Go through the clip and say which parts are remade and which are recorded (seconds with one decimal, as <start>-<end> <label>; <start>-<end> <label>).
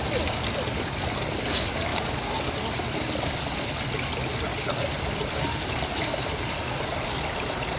0.0-1.9 recorded; 1.9-3.0 remade; 3.0-7.8 recorded